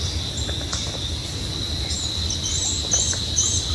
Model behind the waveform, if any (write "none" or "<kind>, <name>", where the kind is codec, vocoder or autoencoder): vocoder, BigVGAN v2